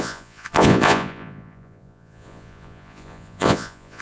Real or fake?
fake